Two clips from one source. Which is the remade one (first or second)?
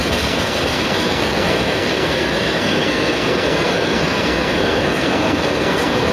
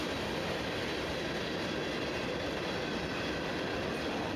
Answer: first